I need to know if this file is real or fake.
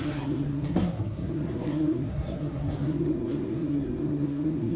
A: fake